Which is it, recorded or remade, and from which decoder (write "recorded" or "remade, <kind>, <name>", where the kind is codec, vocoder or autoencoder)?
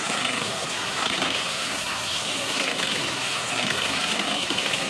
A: remade, codec, SNAC